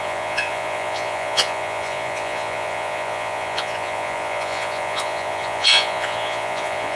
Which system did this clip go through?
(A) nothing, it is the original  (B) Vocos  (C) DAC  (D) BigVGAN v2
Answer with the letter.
B